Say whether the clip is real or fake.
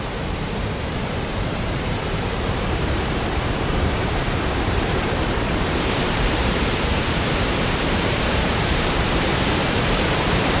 fake